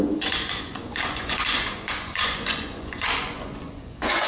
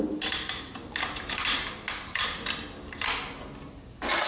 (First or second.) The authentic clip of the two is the second